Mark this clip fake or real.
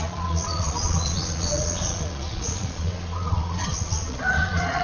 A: fake